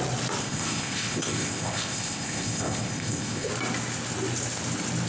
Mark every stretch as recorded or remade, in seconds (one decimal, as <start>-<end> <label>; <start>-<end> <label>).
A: 0.0-0.4 recorded; 0.4-3.5 remade; 3.5-5.1 recorded